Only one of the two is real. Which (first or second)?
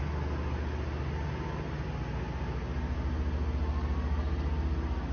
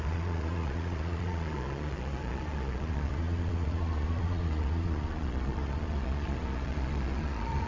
first